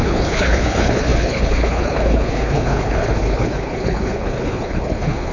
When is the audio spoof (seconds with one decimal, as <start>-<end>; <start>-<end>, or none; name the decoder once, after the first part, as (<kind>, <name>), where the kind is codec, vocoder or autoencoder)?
0.0-5.3 (codec, HILCodec)